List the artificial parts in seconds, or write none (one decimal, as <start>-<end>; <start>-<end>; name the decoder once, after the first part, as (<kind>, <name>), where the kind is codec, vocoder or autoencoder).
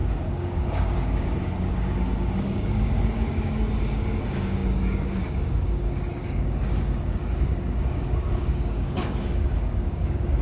0.0-10.4 (codec, DAC)